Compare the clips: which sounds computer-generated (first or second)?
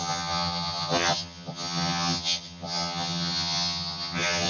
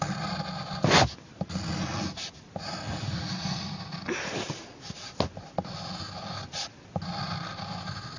first